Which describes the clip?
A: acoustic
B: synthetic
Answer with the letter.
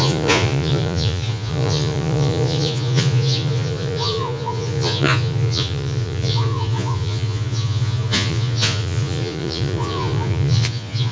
B